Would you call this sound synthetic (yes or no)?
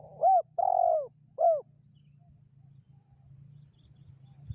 no